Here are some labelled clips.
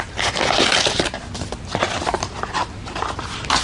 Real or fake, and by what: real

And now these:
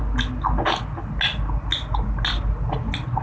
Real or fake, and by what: real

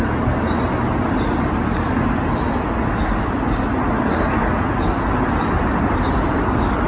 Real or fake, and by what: real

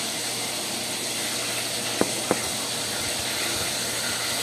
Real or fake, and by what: real